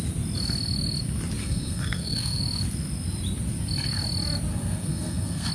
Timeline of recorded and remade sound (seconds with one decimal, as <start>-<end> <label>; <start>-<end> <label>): 0.0-1.4 recorded; 1.4-2.4 remade; 2.4-4.5 recorded; 4.5-5.5 remade